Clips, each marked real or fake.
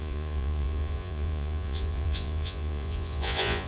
fake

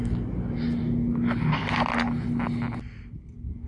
real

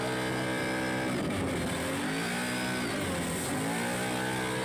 real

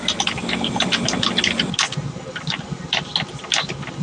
real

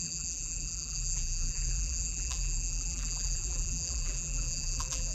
fake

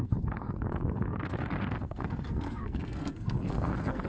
fake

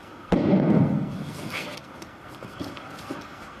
fake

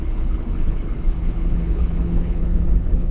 fake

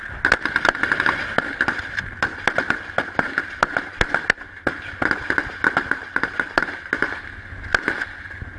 real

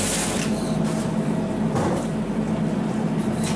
real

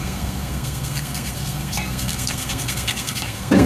fake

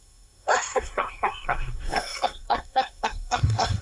fake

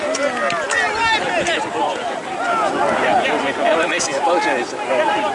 real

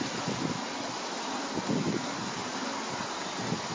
real